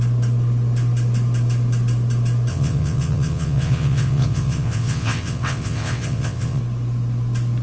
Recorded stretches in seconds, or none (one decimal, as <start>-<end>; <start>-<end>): 0.0-2.5; 6.6-7.6